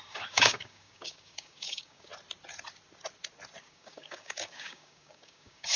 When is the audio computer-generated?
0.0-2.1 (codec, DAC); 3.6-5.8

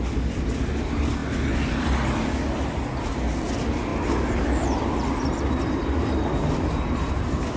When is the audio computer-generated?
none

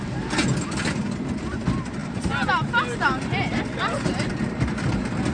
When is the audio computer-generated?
none

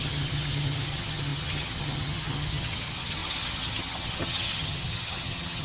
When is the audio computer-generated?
0.0-5.6 (vocoder, HiFi-GAN)